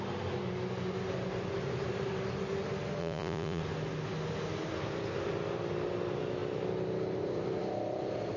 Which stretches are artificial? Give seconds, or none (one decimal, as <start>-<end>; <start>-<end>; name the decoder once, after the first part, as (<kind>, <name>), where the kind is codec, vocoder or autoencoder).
3.0-3.6 (vocoder, Vocos)